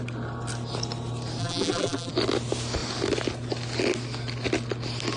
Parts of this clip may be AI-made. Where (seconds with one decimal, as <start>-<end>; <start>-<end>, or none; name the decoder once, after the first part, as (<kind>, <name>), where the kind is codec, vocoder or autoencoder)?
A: 1.4-2.1 (vocoder, BigVGAN v2)